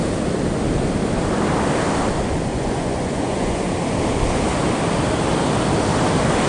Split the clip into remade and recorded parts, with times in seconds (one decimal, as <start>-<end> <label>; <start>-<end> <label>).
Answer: 0.0-2.5 recorded; 2.5-3.6 remade; 3.6-6.5 recorded